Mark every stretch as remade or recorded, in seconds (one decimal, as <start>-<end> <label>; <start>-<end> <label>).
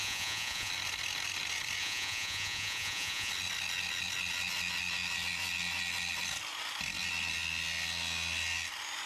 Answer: 0.0-0.7 remade; 0.7-1.8 recorded; 1.8-3.3 remade; 3.3-9.1 recorded